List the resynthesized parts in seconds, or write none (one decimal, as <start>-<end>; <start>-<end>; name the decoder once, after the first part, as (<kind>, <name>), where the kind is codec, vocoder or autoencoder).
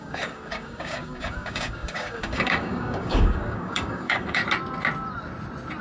0.0-4.4 (codec, DAC)